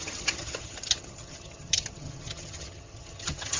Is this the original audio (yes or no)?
no